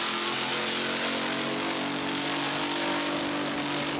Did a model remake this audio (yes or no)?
no